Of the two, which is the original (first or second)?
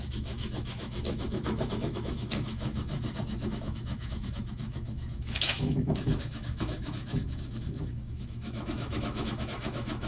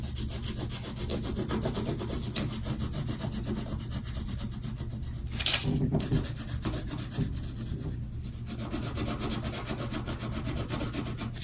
second